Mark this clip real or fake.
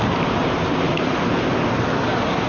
real